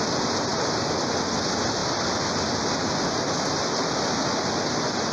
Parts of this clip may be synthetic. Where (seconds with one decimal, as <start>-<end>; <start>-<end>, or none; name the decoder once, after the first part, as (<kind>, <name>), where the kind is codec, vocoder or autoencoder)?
none